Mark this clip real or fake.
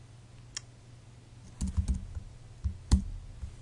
real